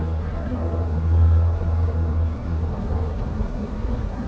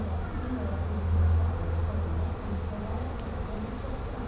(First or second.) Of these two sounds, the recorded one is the second